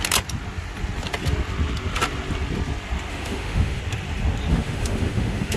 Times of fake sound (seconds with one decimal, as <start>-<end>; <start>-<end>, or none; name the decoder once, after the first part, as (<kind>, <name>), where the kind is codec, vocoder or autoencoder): 3.1-3.8 (autoencoder, DAC-VAE); 4.5-5.6